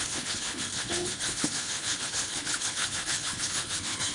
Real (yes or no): no